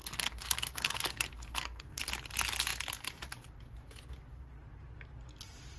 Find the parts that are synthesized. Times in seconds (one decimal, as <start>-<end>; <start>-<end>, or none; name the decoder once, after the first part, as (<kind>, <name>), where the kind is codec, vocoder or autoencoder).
0.0-2.0 (codec, SNAC)